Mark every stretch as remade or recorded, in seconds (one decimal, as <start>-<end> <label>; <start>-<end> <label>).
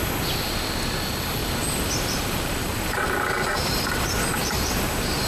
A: 0.0-1.4 recorded; 1.4-3.9 remade; 3.9-4.4 recorded; 4.4-5.3 remade